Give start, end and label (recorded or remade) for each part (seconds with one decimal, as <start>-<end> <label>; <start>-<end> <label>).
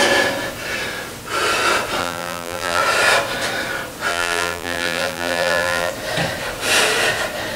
0.0-2.0 recorded; 2.0-2.8 remade; 2.8-4.1 recorded; 4.1-5.9 remade; 5.9-7.6 recorded